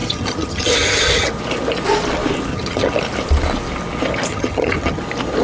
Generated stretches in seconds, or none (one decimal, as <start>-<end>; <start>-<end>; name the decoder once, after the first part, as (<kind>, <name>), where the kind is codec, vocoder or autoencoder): 0.0-1.3 (vocoder, HiFi-GAN); 2.5-3.0; 4.3-5.0